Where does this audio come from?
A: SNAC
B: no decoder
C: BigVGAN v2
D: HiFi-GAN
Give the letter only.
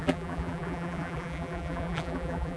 C